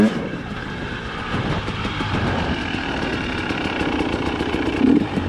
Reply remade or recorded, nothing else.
remade